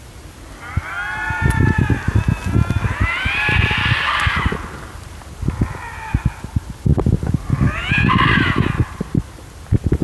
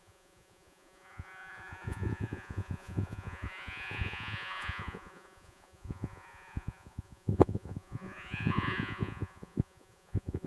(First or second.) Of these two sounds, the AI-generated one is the second